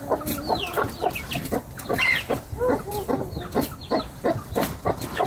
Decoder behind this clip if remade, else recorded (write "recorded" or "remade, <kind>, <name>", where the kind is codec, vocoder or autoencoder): recorded